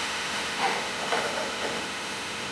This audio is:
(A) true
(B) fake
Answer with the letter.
B